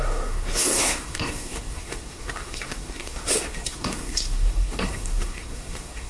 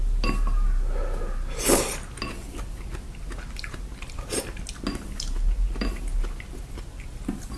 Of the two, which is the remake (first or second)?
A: first